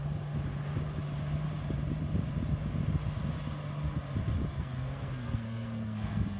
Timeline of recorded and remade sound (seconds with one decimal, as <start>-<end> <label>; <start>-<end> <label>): 0.0-4.5 recorded; 4.5-6.4 remade